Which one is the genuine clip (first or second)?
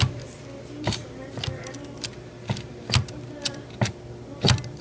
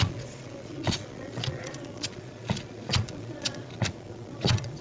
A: first